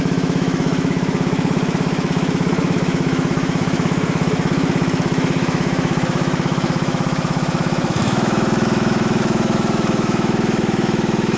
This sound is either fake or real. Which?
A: fake